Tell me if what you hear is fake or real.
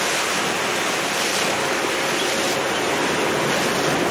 real